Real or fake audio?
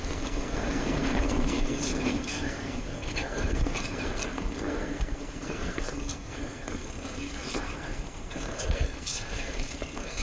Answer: fake